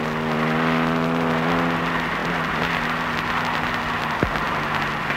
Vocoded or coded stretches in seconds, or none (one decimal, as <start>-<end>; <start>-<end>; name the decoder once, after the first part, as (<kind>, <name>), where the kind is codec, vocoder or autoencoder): none